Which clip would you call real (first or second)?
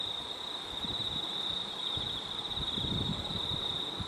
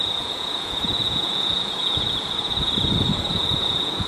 first